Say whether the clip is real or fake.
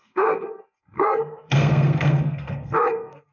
fake